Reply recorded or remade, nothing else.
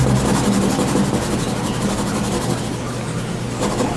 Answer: recorded